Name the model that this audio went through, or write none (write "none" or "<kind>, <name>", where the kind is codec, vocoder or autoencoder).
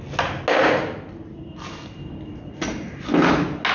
none